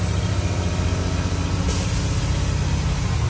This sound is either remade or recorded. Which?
recorded